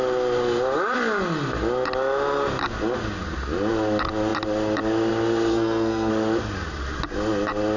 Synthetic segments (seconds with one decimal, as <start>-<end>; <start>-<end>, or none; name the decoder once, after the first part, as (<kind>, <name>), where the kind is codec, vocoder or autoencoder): 5.5-6.1 (codec, SNAC)